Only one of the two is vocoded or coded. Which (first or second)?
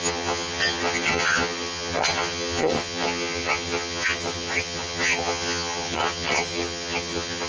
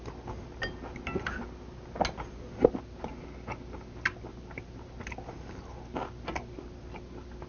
first